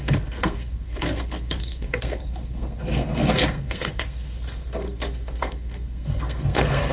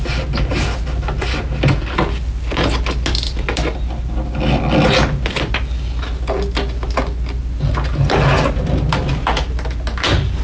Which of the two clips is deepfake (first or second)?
first